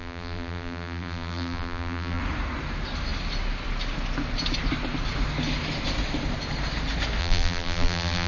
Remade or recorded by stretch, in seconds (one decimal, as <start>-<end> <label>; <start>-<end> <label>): 0.0-2.2 remade; 2.2-7.2 recorded; 7.2-8.3 remade